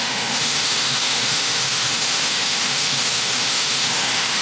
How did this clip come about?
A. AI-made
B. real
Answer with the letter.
A